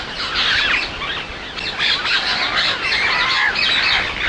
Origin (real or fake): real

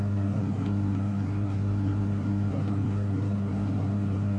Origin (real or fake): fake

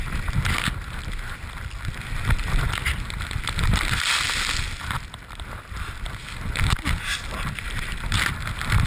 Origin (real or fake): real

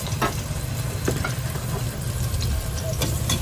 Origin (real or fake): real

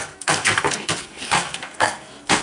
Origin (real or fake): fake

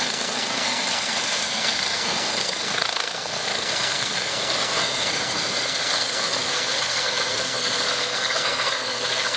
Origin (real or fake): fake